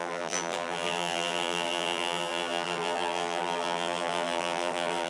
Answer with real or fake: fake